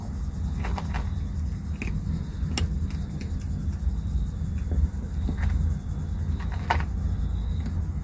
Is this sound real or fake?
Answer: real